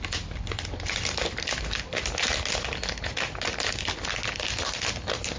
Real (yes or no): yes